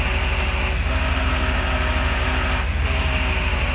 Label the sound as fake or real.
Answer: real